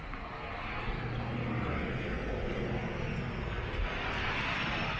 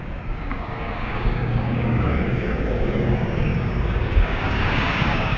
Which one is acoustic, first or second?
first